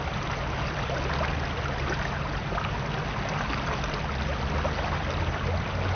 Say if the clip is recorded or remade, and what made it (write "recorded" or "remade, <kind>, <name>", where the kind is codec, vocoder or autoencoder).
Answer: recorded